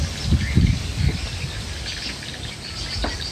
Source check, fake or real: real